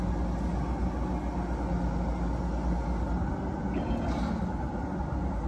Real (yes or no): yes